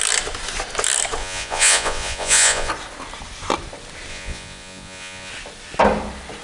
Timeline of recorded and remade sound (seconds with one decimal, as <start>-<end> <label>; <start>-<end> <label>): 0.0-1.2 recorded; 1.2-2.7 remade; 2.7-4.1 recorded; 4.1-5.3 remade; 5.3-6.4 recorded